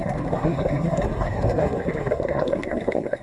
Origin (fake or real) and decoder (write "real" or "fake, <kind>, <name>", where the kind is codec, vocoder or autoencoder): fake, codec, SNAC